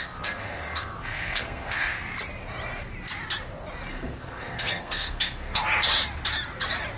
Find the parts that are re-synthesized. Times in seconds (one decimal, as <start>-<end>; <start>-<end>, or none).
0.0-2.1; 3.9-5.6